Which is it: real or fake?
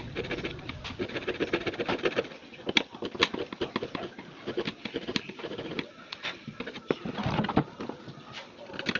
real